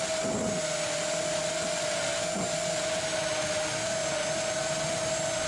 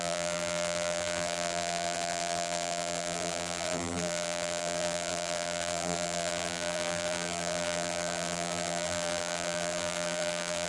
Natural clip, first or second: first